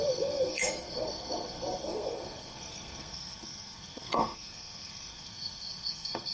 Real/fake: fake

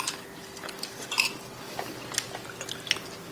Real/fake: real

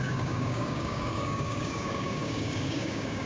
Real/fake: fake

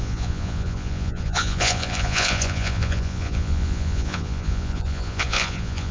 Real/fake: fake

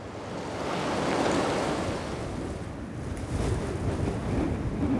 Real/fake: real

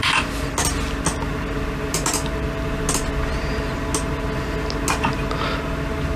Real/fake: real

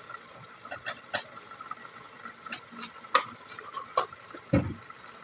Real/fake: real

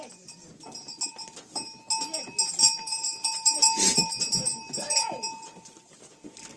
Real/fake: real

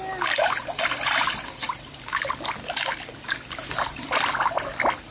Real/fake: fake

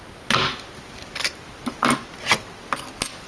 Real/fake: real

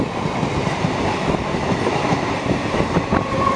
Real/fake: real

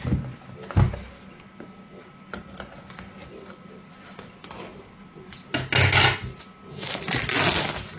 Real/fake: real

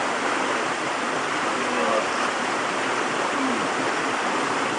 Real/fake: real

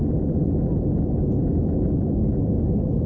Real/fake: real